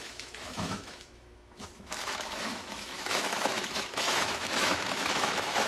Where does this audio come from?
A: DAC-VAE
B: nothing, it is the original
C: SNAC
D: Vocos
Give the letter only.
A